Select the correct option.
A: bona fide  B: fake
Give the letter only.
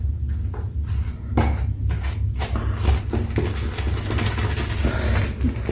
A